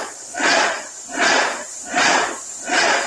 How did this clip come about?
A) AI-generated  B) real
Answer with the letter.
A